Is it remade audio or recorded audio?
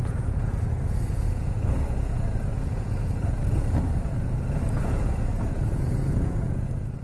remade